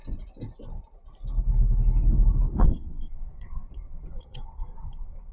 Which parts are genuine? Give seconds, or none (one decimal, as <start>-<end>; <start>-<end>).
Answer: 0.0-2.6